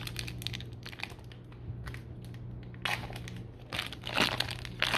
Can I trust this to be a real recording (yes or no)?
yes